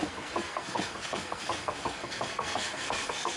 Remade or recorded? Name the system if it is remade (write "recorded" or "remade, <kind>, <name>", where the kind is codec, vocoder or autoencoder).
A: remade, codec, SNAC